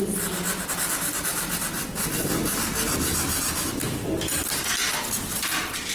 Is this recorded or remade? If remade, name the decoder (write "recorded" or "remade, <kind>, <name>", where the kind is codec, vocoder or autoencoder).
recorded